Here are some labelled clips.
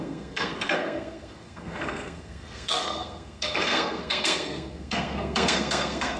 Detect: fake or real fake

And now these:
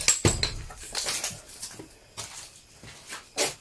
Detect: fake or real real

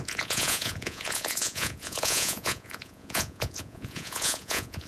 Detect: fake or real fake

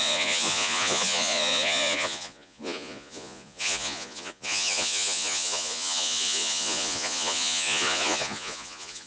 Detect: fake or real fake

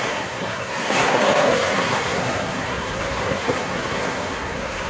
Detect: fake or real fake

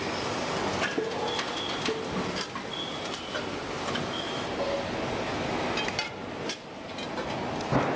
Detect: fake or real real